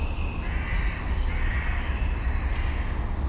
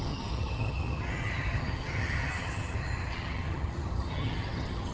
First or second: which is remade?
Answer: second